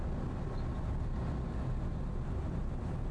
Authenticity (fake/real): real